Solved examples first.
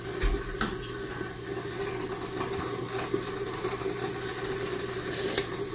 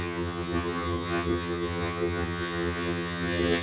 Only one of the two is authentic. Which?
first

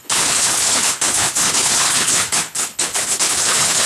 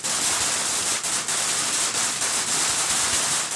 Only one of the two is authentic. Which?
second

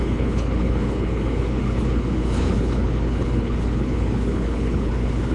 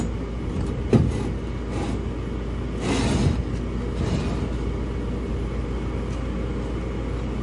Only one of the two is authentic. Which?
second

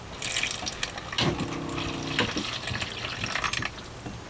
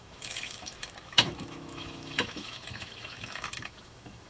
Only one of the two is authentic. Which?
first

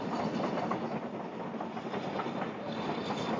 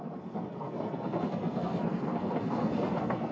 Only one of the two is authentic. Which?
first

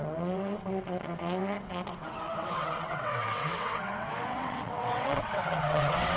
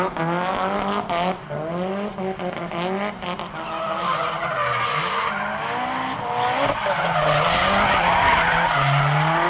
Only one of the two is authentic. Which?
second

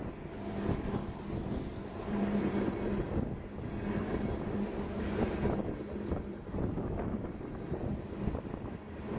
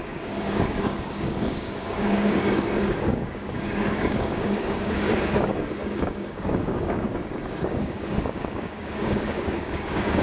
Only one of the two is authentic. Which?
first